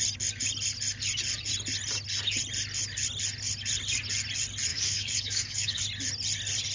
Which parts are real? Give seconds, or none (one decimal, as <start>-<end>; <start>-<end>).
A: 0.0-4.7; 5.8-6.7